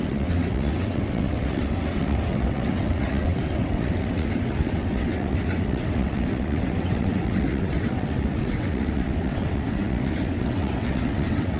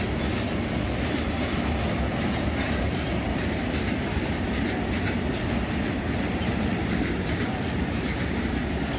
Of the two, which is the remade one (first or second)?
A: first